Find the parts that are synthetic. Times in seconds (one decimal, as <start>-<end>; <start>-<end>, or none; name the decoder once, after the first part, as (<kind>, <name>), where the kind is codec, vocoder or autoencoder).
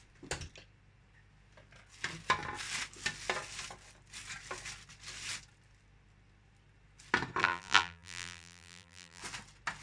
7.4-9.2 (vocoder, BigVGAN v2)